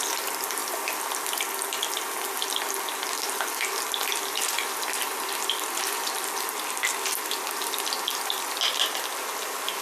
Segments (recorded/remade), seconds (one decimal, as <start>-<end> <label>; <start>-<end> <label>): 0.0-9.8 recorded